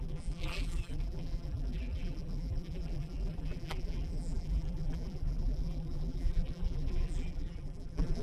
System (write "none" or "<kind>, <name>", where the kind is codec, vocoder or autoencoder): vocoder, BigVGAN v2